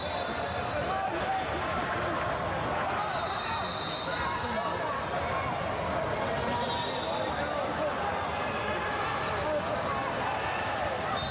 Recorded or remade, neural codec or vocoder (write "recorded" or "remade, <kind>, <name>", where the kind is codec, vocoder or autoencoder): recorded